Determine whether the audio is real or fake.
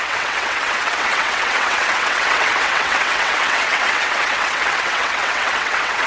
fake